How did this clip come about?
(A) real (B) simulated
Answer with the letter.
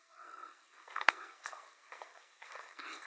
B